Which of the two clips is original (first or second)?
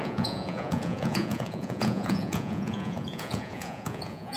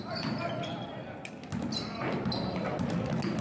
second